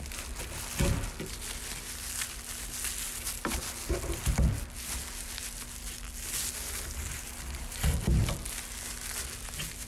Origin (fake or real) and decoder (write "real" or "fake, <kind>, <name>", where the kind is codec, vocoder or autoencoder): real